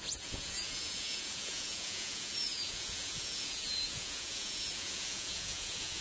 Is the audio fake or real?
fake